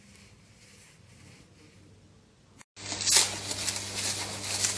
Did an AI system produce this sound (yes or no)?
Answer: no